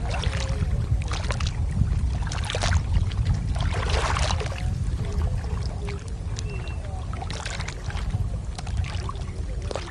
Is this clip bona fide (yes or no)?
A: yes